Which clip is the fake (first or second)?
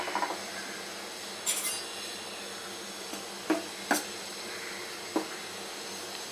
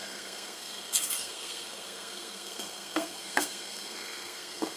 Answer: second